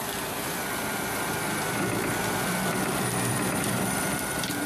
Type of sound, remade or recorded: remade